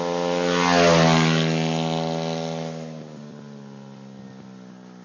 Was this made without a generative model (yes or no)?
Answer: yes